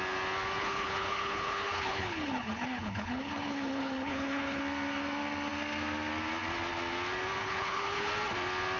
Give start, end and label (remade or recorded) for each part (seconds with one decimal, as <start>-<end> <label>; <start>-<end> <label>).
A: 0.0-0.6 recorded; 0.6-4.6 remade; 4.6-7.4 recorded; 7.4-8.1 remade; 8.1-8.8 recorded